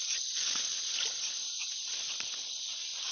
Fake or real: real